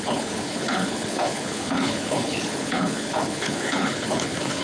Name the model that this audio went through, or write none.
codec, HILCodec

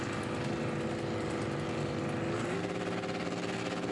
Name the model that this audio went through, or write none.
none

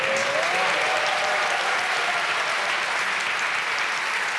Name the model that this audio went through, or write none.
none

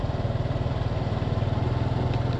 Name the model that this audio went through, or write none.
none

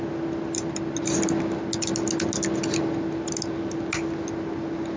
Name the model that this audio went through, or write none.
none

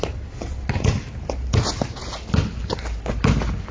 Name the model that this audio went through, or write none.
none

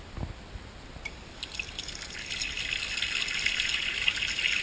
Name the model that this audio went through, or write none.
none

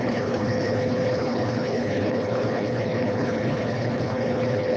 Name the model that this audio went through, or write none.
codec, HILCodec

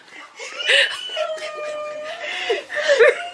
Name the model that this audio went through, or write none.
none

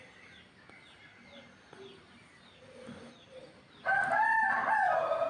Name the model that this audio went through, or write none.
none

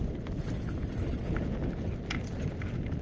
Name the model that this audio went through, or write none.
none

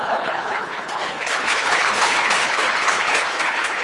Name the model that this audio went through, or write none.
codec, HILCodec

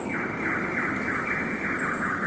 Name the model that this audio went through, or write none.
none